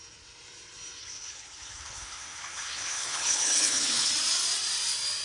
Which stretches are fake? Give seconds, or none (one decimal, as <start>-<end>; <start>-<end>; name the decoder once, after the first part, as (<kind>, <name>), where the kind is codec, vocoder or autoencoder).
1.0-4.1 (codec, HILCodec)